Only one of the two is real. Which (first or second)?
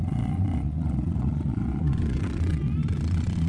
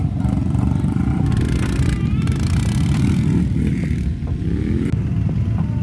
second